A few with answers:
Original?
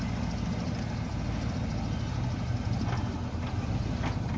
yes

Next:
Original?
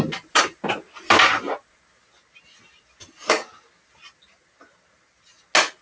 yes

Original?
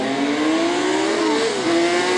yes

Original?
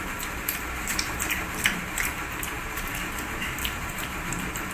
no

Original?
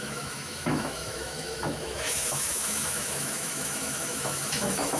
no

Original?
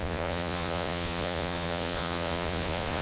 no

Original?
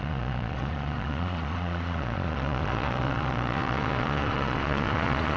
no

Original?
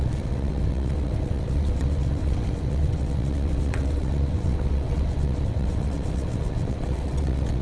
no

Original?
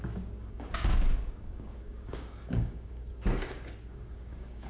no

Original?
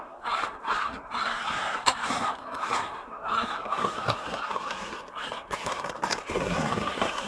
no